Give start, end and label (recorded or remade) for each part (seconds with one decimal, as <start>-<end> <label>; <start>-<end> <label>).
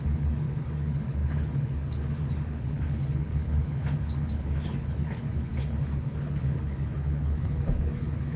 0.0-8.4 remade